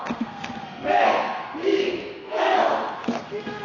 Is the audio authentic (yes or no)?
no